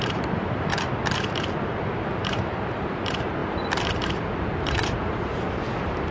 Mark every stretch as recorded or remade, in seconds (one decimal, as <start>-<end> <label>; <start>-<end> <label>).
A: 0.0-0.7 remade; 0.7-2.0 recorded; 2.0-6.1 remade